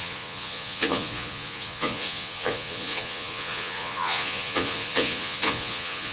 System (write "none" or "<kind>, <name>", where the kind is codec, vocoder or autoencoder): vocoder, Vocos